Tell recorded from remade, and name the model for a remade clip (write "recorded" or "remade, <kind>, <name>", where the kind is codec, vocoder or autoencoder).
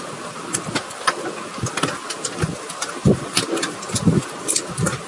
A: recorded